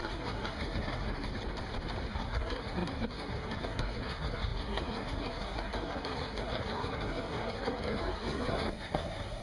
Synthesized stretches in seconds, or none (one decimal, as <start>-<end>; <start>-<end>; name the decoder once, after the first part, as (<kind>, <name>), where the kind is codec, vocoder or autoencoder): 0.0-1.3 (codec, SNAC); 2.1-9.4

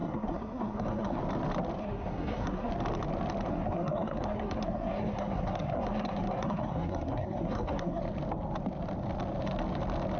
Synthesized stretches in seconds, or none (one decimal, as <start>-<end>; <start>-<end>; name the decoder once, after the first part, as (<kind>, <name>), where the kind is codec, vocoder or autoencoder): 0.0-1.2 (codec, SNAC); 1.8-2.7; 3.5-8.0

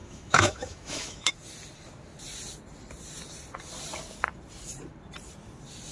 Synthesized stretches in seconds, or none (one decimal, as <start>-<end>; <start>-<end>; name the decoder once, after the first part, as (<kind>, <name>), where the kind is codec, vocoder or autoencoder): 0.0-1.3 (autoencoder, DAC-VAE)

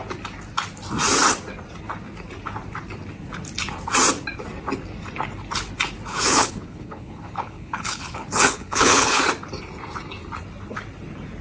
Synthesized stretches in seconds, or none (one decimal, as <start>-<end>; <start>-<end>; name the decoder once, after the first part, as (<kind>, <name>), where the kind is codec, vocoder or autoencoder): 6.1-9.2 (codec, HILCodec)

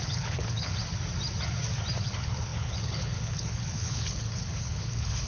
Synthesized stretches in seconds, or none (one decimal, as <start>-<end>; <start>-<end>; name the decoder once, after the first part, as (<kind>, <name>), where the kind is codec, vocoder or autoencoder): 0.0-0.8 (codec, HILCodec); 2.0-5.3

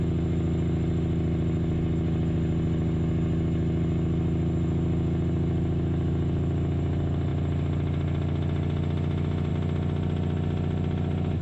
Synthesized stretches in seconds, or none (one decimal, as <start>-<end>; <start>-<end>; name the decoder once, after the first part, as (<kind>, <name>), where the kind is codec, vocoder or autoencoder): none